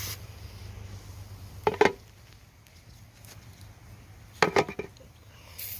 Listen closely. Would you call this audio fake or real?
real